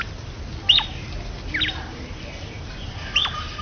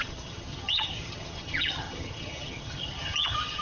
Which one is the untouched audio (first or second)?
first